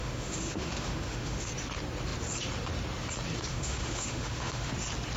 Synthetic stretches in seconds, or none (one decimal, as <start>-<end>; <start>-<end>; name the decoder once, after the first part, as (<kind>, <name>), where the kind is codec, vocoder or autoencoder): 0.0-1.5 (autoencoder, DAC-VAE); 3.5-4.7

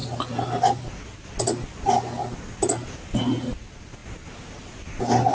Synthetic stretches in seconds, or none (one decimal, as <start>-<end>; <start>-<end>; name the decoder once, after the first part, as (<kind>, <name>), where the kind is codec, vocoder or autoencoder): none

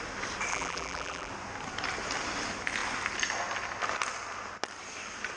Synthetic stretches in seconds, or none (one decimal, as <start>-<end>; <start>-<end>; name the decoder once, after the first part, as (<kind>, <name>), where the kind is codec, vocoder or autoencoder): 0.5-1.3 (vocoder, BigVGAN v2)

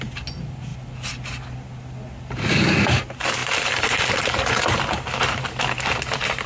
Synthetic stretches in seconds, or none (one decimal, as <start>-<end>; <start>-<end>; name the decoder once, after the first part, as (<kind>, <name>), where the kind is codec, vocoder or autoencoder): 3.4-4.8 (vocoder, BigVGAN v2)

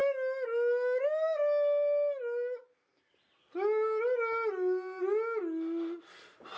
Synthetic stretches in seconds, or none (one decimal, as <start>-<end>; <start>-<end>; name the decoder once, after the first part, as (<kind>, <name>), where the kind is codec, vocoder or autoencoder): none

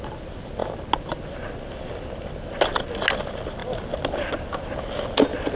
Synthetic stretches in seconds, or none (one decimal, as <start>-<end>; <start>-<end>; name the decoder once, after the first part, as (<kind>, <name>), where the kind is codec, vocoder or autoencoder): none